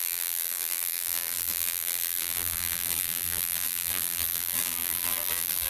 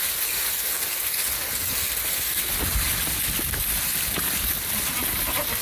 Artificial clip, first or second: first